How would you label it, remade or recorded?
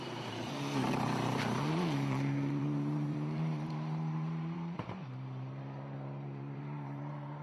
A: remade